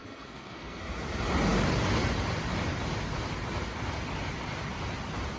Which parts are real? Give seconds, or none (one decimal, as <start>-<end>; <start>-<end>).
0.8-5.4